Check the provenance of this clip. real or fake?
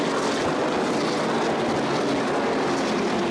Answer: real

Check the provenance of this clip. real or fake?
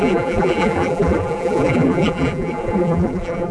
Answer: fake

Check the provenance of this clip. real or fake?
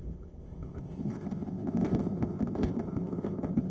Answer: fake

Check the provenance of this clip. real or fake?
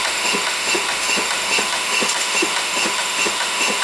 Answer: fake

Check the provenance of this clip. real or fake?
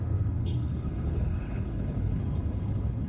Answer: fake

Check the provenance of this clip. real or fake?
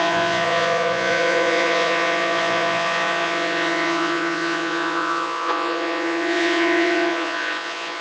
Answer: fake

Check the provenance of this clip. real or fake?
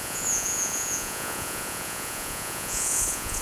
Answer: fake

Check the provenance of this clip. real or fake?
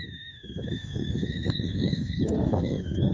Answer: fake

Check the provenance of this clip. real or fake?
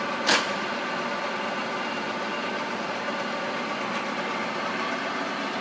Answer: fake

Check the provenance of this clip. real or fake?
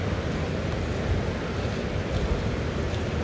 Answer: real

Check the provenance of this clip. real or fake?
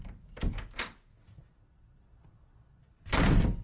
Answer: real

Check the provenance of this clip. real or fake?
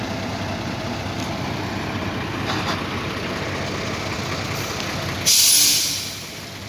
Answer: real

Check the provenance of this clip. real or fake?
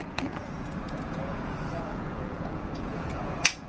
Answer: fake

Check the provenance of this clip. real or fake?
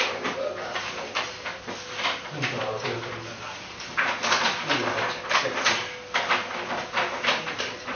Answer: real